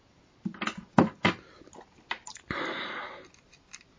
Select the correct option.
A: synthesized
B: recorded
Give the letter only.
B